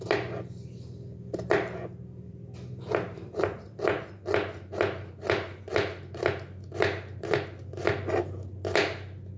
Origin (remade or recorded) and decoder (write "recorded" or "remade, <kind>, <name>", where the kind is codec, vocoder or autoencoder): recorded